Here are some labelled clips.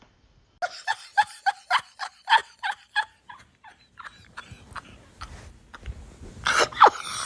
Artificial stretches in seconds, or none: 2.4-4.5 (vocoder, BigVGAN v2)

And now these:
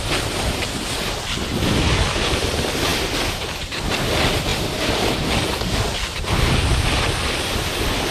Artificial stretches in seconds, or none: 4.5-5.1 (vocoder, BigVGAN v2)

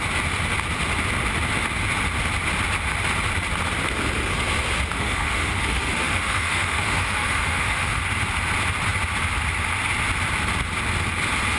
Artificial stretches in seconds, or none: 4.9-8.0 (autoencoder, DAC-VAE)

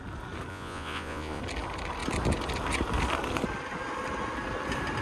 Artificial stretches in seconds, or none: 0.5-1.4 (vocoder, Vocos)